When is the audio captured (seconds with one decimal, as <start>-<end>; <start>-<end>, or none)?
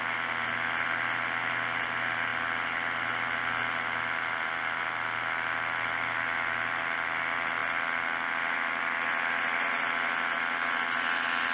0.0-11.5